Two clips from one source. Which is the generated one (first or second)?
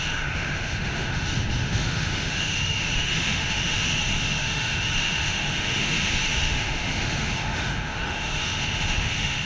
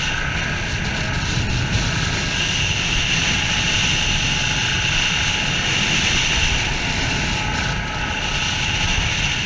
first